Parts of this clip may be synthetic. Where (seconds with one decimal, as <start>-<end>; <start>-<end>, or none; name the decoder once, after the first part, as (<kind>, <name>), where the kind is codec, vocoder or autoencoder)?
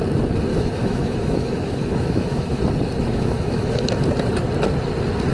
0.5-2.6 (autoencoder, DAC-VAE); 3.1-3.8